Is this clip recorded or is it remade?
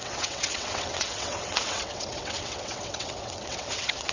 remade